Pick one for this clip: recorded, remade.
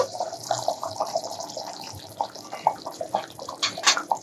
remade